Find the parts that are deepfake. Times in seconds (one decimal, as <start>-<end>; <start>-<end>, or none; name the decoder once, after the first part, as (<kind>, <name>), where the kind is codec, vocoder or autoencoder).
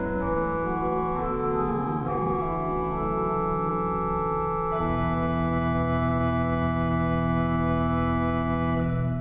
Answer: 1.7-2.4 (vocoder, Vocos)